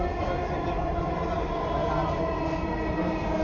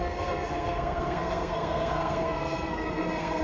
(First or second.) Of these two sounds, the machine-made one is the second